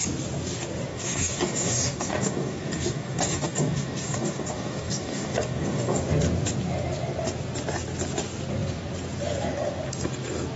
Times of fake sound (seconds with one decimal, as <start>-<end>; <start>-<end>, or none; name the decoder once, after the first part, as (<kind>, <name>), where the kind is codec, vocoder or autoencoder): 0.9-6.0 (codec, DAC)

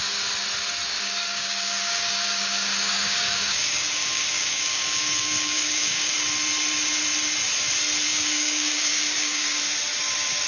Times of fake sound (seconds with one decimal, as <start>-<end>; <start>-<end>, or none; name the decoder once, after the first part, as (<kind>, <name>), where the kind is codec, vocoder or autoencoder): 0.9-6.1 (codec, DAC); 8.1-9.6

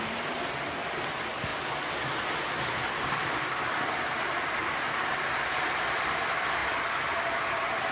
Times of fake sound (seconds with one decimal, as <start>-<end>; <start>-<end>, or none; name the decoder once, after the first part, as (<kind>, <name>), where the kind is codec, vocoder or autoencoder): none